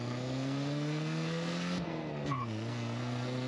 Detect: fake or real fake